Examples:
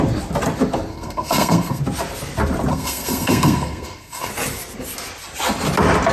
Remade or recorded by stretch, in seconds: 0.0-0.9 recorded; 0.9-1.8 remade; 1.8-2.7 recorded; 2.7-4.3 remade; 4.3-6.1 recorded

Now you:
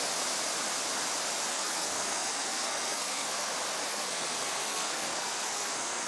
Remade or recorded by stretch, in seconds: 0.0-1.5 recorded; 1.5-3.5 remade; 3.5-3.9 recorded; 3.9-6.1 remade

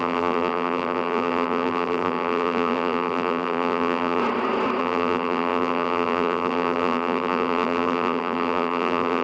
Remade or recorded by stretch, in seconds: 0.0-4.2 remade; 4.2-4.8 recorded; 4.8-9.2 remade

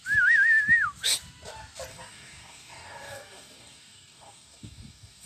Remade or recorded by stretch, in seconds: 0.0-1.9 recorded; 1.9-5.3 remade

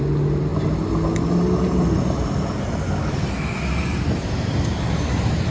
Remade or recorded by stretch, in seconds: 0.0-5.5 recorded